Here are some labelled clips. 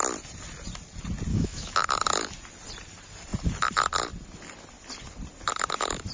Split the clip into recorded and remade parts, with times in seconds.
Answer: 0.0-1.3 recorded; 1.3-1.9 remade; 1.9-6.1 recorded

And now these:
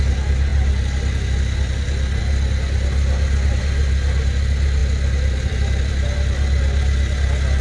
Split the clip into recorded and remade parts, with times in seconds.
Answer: 0.0-7.6 recorded

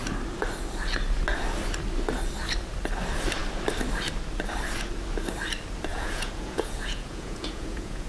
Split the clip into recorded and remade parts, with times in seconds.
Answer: 0.0-5.9 recorded; 5.9-8.1 remade